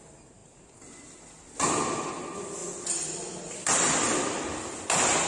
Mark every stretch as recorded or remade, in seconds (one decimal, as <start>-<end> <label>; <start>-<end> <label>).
0.0-5.3 recorded